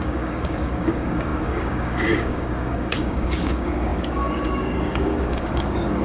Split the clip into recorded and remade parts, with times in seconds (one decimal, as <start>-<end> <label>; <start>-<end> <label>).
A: 0.0-6.0 remade